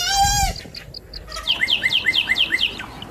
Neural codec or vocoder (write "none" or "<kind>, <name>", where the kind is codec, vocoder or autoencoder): none